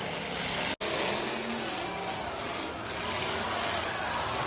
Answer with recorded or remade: recorded